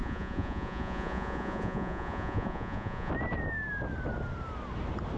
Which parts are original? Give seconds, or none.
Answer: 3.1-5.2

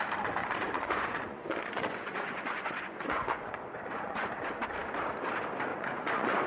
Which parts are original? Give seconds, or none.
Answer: 0.0-0.4; 4.3-5.7

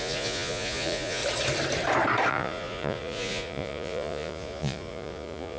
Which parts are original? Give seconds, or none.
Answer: 1.2-2.3

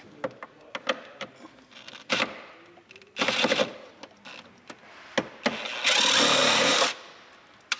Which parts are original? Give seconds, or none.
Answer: 0.0-6.4

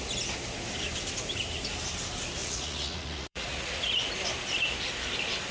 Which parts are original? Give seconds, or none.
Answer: 0.0-2.4; 3.7-5.5

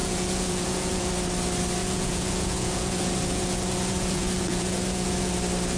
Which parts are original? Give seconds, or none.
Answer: 1.1-1.8; 5.3-5.8

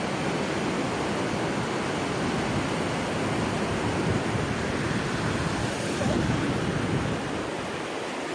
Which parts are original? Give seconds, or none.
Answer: 0.0-8.3

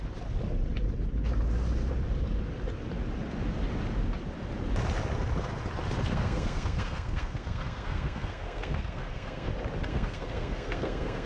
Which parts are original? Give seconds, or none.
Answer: 0.0-6.1; 9.5-9.9